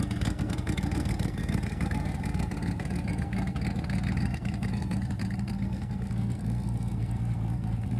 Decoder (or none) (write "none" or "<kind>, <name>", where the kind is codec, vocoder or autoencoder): codec, SNAC